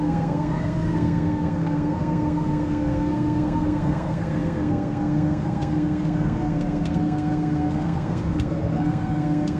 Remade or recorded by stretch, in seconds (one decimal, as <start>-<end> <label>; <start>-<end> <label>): 0.0-9.6 remade